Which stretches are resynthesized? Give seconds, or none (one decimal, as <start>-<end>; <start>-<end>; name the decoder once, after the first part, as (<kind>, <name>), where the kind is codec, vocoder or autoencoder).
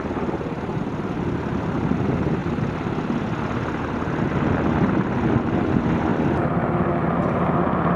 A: none